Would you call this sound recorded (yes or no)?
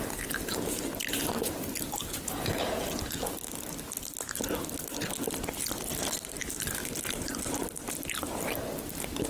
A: yes